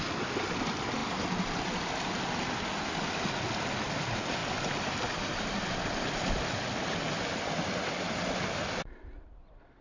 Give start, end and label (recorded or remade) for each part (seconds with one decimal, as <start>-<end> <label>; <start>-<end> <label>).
0.0-9.8 recorded